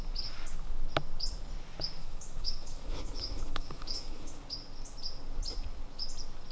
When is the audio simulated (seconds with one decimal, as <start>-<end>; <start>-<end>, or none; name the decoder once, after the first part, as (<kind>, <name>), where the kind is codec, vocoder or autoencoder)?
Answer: 2.0-4.4 (autoencoder, DAC-VAE)